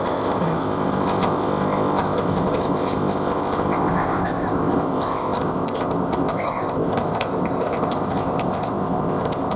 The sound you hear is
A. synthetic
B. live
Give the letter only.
A